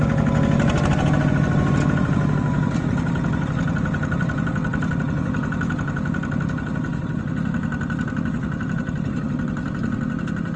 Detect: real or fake real